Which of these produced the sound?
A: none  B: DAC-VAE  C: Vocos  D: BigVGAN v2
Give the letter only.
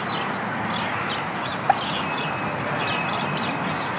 A